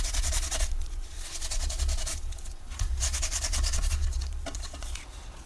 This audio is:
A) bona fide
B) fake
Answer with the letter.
B